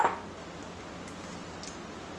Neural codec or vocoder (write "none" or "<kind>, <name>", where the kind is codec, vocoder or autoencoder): none